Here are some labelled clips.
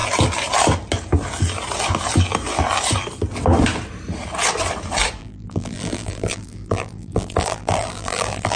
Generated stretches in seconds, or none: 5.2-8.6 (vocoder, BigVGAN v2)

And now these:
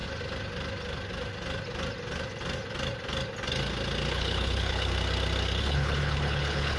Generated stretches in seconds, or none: 4.1-4.9 (codec, HILCodec); 5.6-6.8

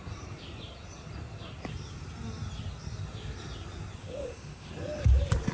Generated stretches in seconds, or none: 4.0-4.7 (autoencoder, DAC-VAE)

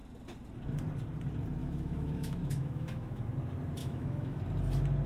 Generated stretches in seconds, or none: 1.6-3.3 (autoencoder, DAC-VAE); 3.8-4.4